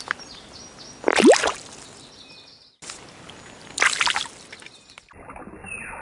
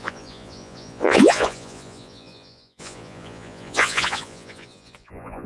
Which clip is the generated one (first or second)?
second